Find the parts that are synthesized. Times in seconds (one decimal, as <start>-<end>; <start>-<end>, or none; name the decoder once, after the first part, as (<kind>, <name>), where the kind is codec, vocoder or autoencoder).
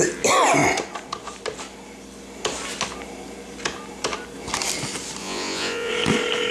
5.2-5.9 (vocoder, Vocos)